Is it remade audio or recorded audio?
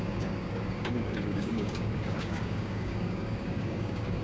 remade